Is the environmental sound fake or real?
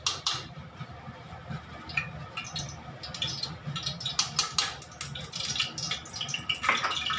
real